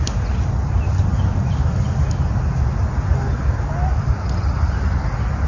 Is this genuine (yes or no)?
yes